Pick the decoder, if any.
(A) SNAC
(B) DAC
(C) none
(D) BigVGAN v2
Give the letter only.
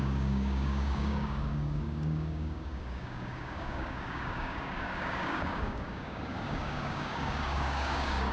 B